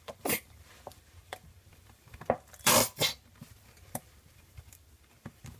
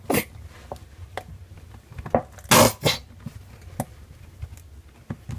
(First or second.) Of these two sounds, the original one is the second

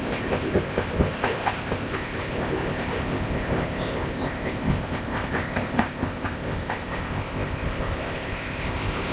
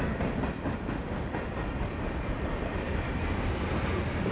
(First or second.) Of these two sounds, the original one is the second